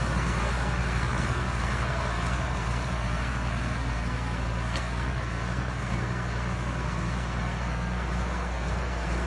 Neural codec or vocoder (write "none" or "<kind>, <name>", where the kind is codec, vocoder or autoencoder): codec, SNAC